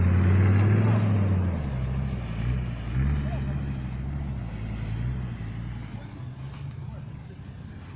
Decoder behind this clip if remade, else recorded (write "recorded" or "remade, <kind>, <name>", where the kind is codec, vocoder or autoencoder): recorded